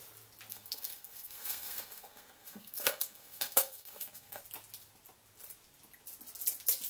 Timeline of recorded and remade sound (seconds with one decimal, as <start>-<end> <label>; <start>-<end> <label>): 0.0-0.5 recorded; 0.5-4.4 remade; 4.4-6.9 recorded